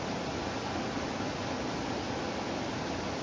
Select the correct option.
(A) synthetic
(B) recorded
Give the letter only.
B